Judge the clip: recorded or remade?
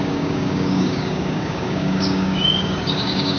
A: remade